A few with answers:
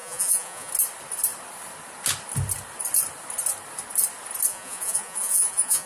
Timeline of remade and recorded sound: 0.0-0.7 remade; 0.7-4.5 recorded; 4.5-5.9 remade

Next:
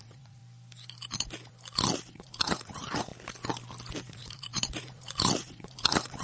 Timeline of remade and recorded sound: 0.0-0.4 remade; 0.4-2.1 recorded; 2.1-3.1 remade; 3.1-4.0 recorded; 4.0-6.2 remade

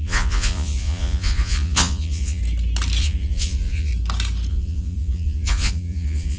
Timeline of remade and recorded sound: 0.0-2.4 remade; 2.4-3.0 recorded; 3.0-3.9 remade; 3.9-4.5 recorded; 4.5-6.4 remade

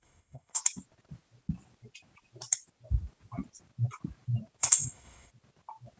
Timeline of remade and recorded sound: 0.0-0.6 remade; 0.6-4.6 recorded; 4.6-5.3 remade; 5.3-6.0 recorded

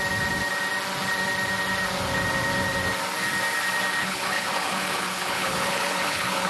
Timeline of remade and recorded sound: 0.0-4.0 recorded; 4.0-6.5 remade

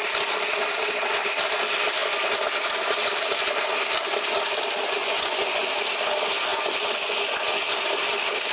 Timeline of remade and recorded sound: 0.0-5.0 recorded; 5.0-5.7 remade; 5.7-6.5 recorded; 6.5-7.4 remade; 7.4-8.5 recorded

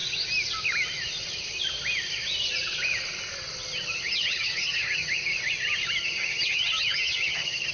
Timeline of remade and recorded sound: 0.0-4.0 recorded; 4.0-5.3 remade; 5.3-6.0 recorded; 6.0-7.7 remade

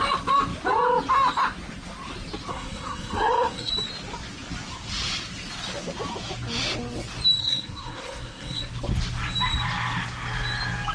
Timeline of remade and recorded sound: 0.0-2.5 recorded; 2.5-3.7 remade; 3.7-7.4 recorded; 7.4-8.6 remade; 8.6-10.9 recorded